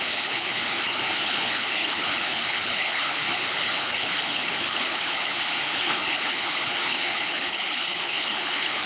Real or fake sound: fake